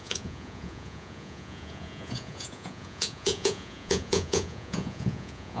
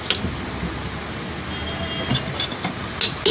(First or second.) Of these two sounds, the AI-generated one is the first